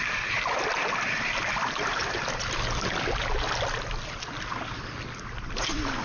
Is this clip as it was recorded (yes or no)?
yes